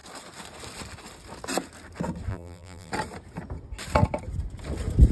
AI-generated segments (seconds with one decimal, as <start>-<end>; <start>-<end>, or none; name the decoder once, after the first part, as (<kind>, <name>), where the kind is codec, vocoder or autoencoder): 2.3-2.9 (vocoder, BigVGAN v2)